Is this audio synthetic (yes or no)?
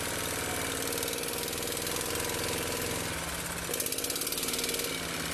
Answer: no